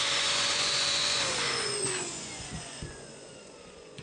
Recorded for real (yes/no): no